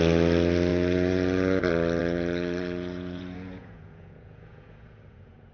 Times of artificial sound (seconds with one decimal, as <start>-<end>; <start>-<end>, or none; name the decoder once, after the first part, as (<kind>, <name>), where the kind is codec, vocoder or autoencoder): 0.7-1.6 (vocoder, Vocos); 2.0-5.5